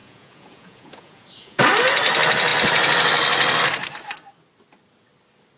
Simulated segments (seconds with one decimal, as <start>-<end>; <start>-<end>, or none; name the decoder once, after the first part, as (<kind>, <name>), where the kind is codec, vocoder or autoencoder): 0.0-1.6 (vocoder, Vocos)